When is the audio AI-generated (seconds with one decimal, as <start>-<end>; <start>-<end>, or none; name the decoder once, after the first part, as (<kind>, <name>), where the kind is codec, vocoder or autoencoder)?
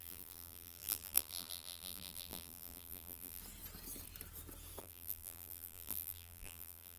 0.0-3.4 (vocoder, BigVGAN v2); 4.8-7.0